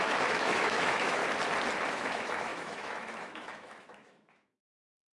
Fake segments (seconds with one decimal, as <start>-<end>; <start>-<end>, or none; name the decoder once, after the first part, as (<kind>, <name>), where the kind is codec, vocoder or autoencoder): 0.0-1.2 (autoencoder, DAC-VAE); 1.9-5.1